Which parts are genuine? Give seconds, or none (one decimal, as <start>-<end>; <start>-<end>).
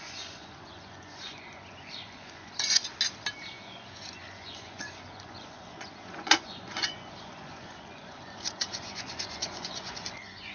2.8-3.5